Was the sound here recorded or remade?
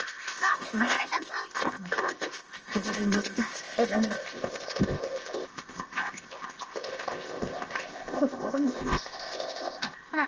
remade